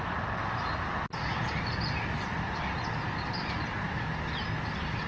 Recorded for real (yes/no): yes